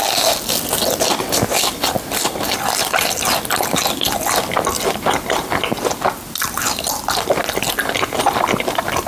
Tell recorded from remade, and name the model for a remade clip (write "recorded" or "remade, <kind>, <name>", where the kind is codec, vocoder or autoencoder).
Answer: recorded